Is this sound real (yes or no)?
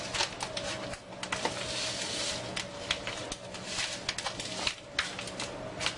yes